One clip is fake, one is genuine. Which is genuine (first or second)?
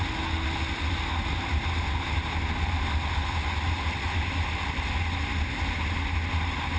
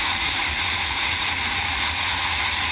first